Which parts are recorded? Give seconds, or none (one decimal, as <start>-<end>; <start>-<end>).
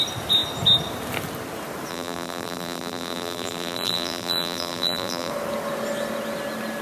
0.0-1.9; 5.3-6.8